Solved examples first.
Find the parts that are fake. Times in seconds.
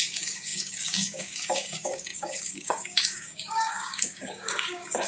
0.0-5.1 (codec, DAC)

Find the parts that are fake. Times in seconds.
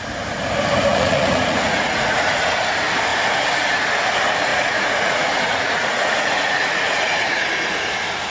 0.9-2.4 (vocoder, Vocos); 4.5-7.4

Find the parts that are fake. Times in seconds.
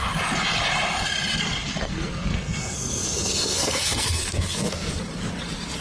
1.4-4.9 (codec, SNAC)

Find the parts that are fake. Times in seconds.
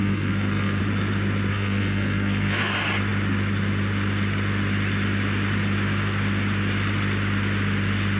0.0-0.8 (codec, SNAC); 1.5-2.7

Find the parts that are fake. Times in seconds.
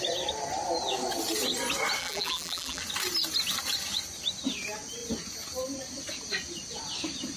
2.0-2.8 (vocoder, BigVGAN v2)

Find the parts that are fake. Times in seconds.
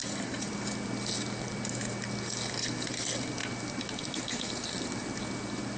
0.0-0.5 (vocoder, BigVGAN v2)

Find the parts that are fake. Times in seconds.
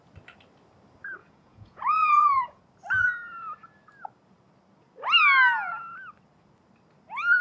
1.2-2.6 (vocoder, Vocos)